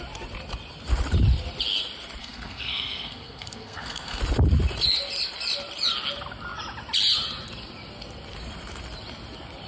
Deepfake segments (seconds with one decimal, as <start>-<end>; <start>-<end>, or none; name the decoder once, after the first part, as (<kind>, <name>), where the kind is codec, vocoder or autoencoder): 2.2-4.2 (codec, SNAC)